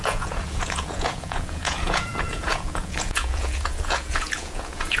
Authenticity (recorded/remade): remade